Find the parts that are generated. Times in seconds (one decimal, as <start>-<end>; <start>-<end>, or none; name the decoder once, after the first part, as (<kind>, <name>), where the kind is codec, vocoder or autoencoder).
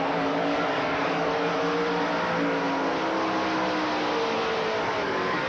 0.0-1.5 (codec, DAC); 4.8-5.5